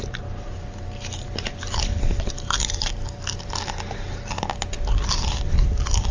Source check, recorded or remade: recorded